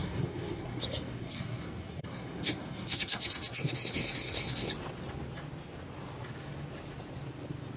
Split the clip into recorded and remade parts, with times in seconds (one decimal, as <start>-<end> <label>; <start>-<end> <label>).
0.0-4.7 remade; 4.7-7.8 recorded